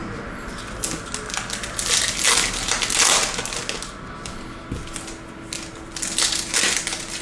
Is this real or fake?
real